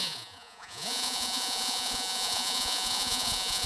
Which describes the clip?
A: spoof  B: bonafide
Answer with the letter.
A